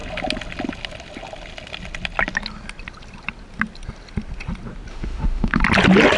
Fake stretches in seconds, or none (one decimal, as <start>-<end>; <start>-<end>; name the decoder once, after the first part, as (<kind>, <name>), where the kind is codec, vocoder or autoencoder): 4.9-5.6 (autoencoder, DAC-VAE)